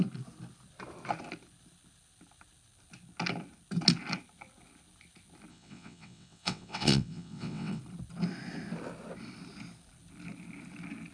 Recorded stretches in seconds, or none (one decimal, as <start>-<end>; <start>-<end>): 0.0-5.5; 7.8-11.1

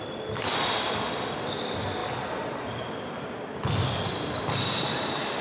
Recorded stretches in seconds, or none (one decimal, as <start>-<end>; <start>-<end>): 0.0-5.4

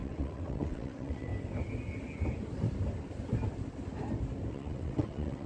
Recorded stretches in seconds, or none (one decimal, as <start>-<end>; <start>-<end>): 1.3-4.5

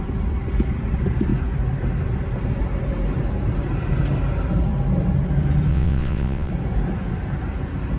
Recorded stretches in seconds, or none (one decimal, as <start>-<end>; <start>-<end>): 0.0-5.7; 6.5-8.0

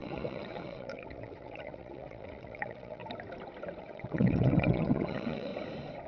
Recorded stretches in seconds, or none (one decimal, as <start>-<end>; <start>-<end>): 3.0-3.8; 5.5-6.1

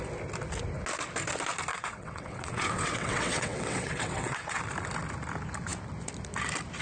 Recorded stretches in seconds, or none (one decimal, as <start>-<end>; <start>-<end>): 0.0-1.7; 4.6-6.8

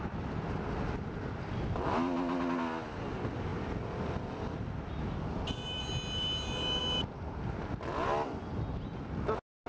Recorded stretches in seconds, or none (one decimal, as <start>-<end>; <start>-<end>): 0.0-9.7

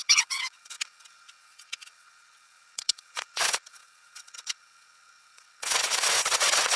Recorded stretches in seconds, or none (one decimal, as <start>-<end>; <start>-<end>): none